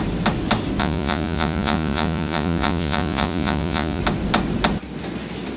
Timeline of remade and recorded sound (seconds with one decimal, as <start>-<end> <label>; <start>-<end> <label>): 0.0-0.8 recorded; 0.8-4.0 remade; 4.0-5.6 recorded